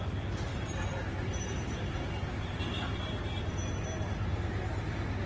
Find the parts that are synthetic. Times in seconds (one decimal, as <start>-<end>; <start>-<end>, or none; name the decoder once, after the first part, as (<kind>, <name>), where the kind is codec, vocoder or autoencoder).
0.5-3.7 (vocoder, BigVGAN v2)